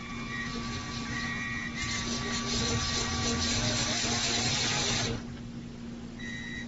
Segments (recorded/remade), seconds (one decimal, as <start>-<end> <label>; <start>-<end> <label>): 0.0-6.7 recorded